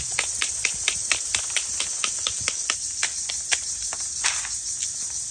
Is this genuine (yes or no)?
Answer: yes